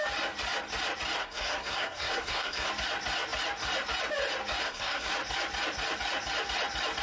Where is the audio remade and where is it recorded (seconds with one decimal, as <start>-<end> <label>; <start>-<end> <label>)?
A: 0.0-1.2 recorded; 1.2-2.7 remade; 2.7-4.6 recorded; 4.6-5.1 remade; 5.1-7.0 recorded